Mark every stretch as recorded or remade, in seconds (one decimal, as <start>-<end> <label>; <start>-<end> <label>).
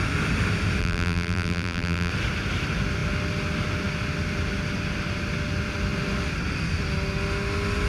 0.0-0.8 recorded; 0.8-2.1 remade; 2.1-7.9 recorded